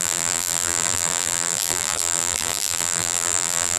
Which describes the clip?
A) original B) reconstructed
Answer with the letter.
B